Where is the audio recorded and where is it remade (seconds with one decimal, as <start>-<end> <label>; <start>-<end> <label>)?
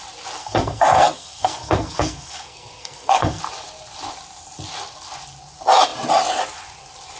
0.0-0.4 recorded; 0.4-3.4 remade; 3.4-7.2 recorded